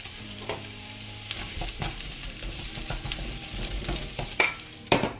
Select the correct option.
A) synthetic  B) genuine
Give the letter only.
A